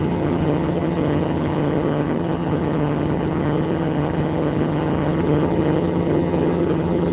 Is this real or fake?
fake